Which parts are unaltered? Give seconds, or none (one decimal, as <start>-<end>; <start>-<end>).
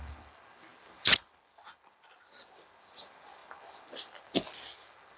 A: 0.0-5.2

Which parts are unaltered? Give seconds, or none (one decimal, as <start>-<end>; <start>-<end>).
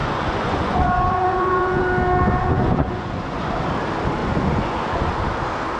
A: 1.8-2.4; 3.6-4.2; 5.1-5.8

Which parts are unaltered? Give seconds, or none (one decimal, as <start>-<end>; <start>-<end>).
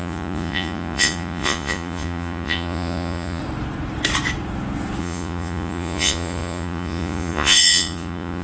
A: 3.4-5.0